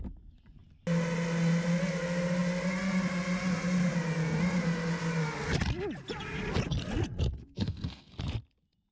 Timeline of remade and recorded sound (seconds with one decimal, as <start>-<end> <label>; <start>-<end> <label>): 0.0-7.4 recorded; 7.4-8.1 remade; 8.1-8.9 recorded